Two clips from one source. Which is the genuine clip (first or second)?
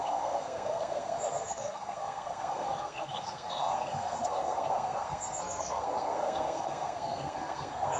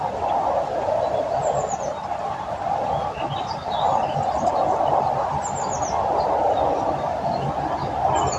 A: second